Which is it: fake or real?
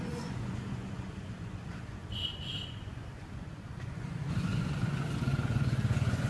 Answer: fake